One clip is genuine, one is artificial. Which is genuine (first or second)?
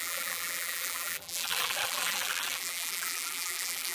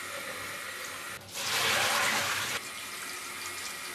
second